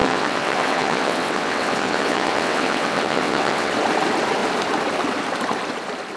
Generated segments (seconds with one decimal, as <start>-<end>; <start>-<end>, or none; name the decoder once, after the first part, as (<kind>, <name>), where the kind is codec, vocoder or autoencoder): 0.0-3.7 (vocoder, WaveNeXt)